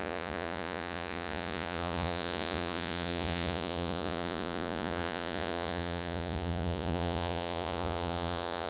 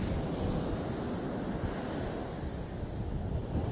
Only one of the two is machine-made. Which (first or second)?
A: first